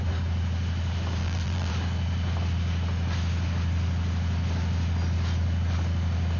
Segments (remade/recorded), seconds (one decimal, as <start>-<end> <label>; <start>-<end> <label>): 0.0-1.2 recorded; 1.2-1.7 remade; 1.7-6.4 recorded